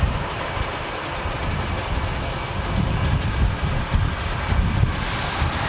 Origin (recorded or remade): recorded